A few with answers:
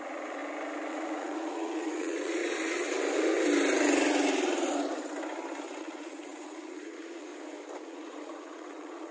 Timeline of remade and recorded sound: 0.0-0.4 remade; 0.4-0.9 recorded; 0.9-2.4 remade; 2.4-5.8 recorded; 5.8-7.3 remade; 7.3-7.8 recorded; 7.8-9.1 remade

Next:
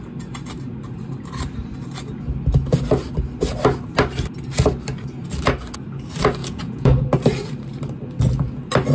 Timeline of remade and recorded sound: 0.0-6.4 recorded; 6.4-7.0 remade; 7.0-8.9 recorded